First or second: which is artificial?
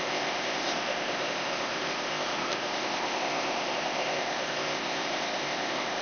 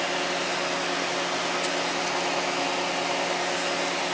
first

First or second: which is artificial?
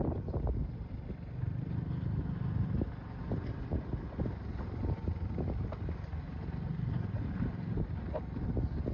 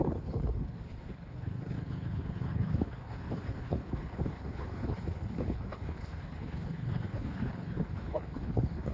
second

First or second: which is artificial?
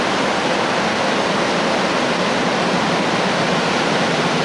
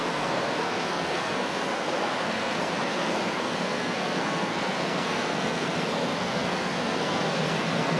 second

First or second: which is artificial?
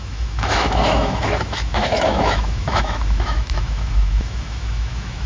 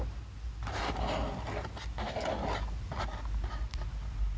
first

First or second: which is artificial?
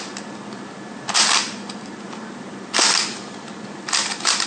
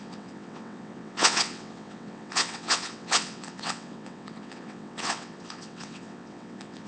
second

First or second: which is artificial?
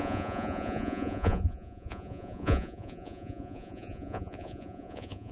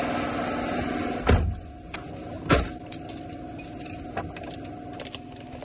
first